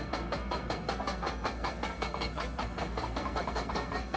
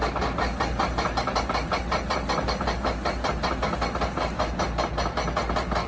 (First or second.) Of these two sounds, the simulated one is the first